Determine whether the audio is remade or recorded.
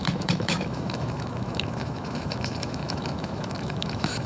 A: remade